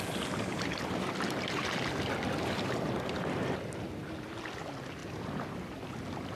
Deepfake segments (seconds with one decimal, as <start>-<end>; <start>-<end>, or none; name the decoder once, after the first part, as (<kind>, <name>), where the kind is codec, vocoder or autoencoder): none